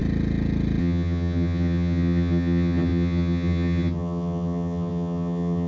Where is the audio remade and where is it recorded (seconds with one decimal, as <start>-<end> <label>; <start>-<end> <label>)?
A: 0.0-0.8 recorded; 0.8-5.7 remade